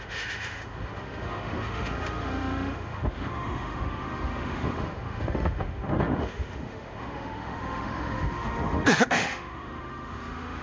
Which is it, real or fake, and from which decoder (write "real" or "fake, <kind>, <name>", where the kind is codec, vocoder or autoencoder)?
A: fake, autoencoder, DAC-VAE